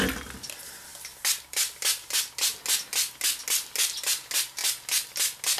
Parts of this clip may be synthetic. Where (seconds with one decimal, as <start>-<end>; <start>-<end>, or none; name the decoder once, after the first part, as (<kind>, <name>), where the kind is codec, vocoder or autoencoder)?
none